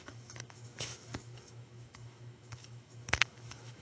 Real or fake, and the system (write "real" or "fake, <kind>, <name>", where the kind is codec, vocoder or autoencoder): fake, autoencoder, DAC-VAE